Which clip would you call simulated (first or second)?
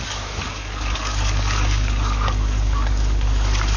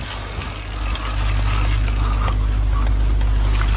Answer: first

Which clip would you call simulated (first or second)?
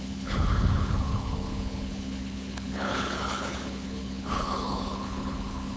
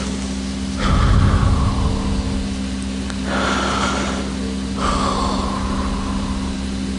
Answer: first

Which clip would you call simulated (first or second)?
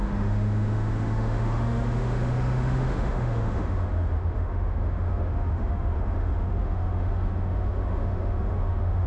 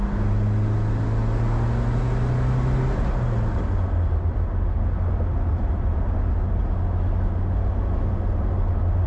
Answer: first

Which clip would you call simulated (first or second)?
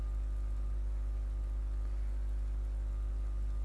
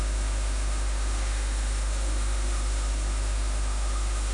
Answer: second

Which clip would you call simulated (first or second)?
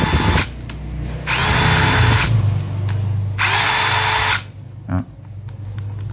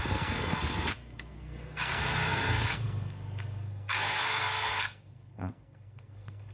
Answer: second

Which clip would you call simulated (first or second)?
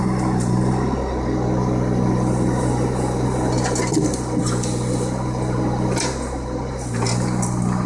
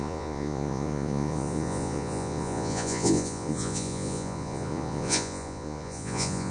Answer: second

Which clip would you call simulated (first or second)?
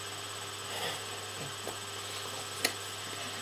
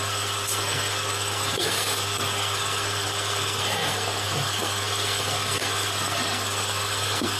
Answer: second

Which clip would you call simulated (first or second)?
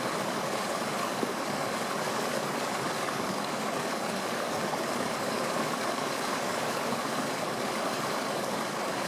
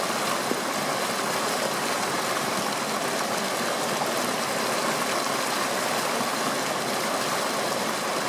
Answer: first